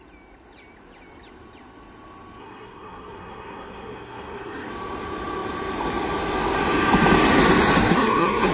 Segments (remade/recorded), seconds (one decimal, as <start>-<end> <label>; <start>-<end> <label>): 0.0-2.4 recorded; 2.4-4.7 remade; 4.7-7.8 recorded; 7.8-8.5 remade